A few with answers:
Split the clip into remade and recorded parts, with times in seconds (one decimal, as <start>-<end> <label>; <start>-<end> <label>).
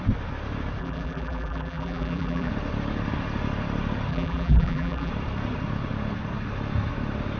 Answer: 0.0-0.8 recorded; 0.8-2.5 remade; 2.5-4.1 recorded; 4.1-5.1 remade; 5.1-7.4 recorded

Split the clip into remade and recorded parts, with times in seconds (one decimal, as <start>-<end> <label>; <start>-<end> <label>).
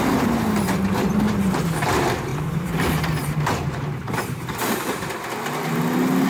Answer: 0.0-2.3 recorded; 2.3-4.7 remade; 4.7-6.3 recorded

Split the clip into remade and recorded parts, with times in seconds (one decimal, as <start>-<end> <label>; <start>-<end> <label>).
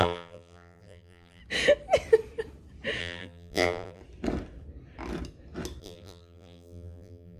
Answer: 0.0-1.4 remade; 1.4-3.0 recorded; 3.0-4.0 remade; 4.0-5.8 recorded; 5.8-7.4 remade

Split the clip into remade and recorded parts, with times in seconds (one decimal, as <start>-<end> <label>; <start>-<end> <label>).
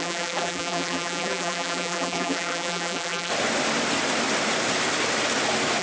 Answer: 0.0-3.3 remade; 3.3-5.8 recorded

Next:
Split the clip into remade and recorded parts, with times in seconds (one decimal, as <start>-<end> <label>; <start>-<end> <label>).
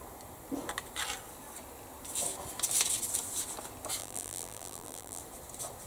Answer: 0.0-4.0 recorded; 4.0-5.2 remade; 5.2-5.9 recorded